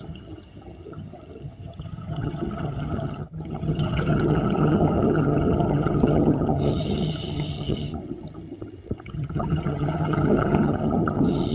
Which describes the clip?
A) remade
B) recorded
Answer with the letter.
A